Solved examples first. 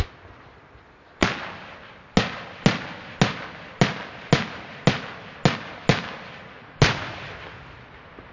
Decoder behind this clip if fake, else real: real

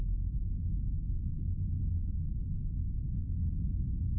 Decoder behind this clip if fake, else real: real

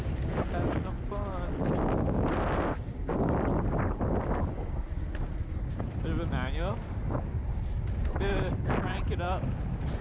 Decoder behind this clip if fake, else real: real